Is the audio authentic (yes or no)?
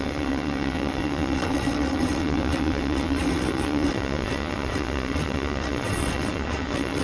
no